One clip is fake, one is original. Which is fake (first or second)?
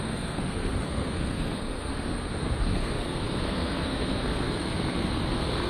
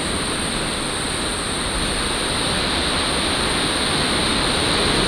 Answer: first